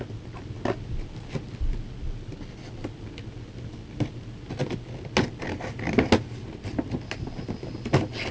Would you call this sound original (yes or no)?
yes